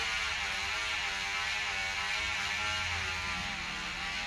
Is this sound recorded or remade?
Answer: recorded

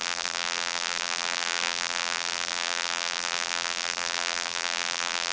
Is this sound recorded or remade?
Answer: remade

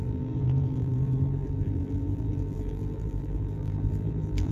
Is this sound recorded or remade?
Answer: remade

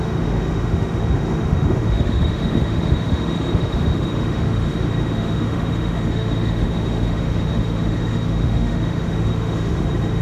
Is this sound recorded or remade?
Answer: remade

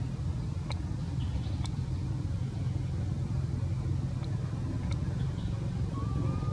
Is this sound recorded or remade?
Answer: recorded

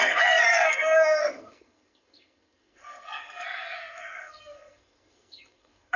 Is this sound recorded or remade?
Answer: remade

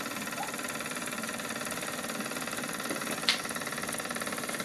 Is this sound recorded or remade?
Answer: remade